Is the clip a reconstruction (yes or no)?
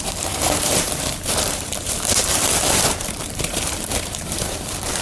yes